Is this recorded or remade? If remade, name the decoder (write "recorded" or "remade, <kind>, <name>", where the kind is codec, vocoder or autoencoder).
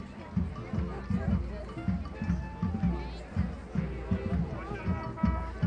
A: recorded